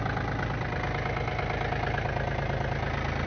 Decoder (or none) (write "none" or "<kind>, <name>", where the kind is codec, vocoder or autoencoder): none